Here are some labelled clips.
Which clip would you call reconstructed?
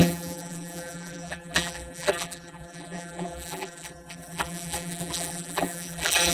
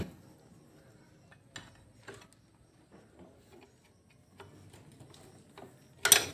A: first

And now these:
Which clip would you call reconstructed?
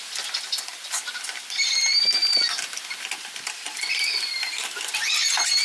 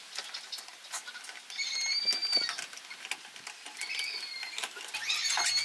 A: first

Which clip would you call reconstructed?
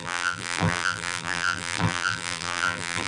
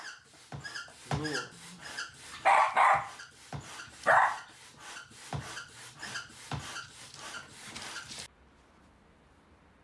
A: first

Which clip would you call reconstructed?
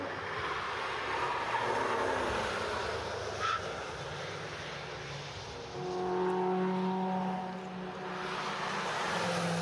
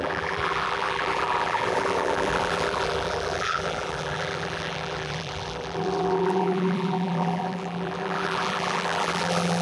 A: second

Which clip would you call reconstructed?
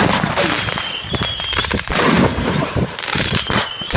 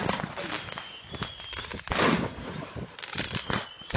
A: first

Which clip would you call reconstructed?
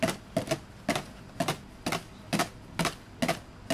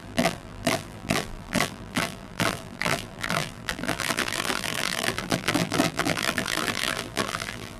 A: second